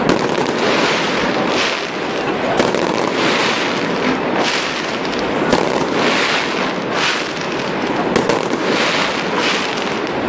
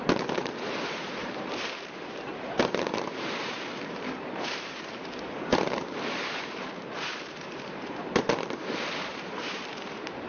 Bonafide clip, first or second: first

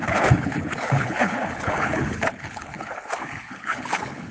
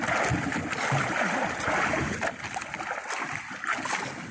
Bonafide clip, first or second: second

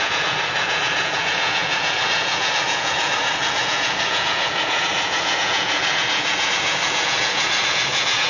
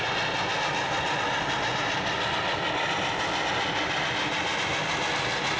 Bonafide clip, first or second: second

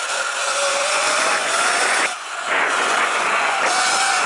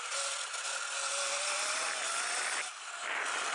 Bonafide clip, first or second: second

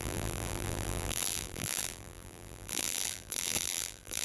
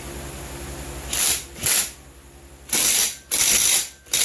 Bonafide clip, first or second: second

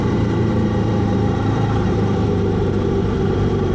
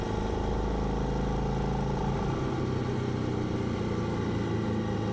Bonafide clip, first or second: second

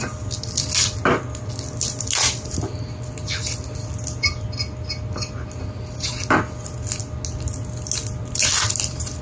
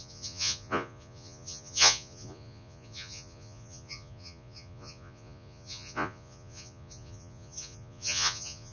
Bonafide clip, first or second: first